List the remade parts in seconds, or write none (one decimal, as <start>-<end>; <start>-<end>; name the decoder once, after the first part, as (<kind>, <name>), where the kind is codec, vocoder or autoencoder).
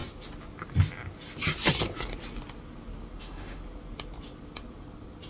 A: 3.2-3.6 (autoencoder, DAC-VAE)